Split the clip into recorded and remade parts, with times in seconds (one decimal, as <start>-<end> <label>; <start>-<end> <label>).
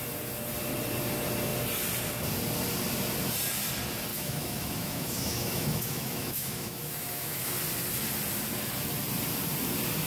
0.0-4.1 recorded; 4.1-7.5 remade; 7.5-10.1 recorded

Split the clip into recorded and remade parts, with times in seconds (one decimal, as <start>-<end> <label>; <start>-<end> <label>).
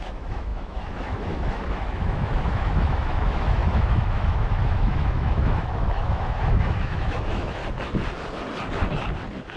0.0-7.6 remade; 7.6-9.6 recorded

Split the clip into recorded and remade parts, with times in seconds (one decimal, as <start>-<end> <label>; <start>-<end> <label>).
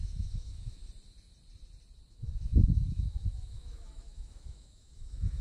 0.0-0.8 remade; 0.8-2.1 recorded; 2.1-5.4 remade